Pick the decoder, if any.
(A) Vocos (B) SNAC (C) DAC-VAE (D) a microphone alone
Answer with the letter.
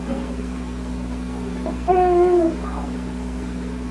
B